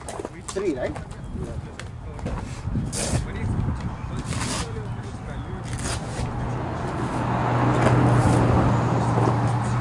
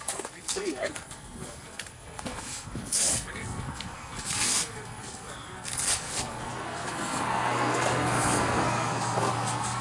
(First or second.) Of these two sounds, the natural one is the first